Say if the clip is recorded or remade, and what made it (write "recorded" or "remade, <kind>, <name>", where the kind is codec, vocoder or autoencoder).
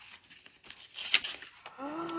recorded